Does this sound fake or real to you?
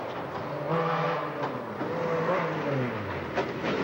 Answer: real